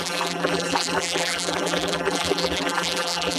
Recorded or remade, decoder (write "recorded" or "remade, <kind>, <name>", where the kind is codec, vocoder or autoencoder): remade, vocoder, BigVGAN v2